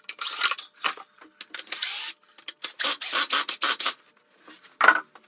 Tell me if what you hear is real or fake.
real